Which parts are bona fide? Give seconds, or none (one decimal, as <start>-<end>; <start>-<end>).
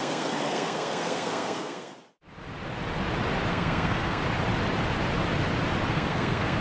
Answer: 1.9-3.5; 4.2-5.9